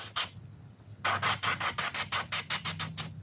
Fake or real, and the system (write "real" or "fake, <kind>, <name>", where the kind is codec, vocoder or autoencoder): real